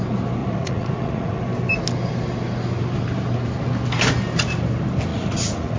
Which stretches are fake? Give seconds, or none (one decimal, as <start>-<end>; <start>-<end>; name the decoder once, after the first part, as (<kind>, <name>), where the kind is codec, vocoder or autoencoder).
0.4-1.4 (vocoder, Vocos); 5.1-5.8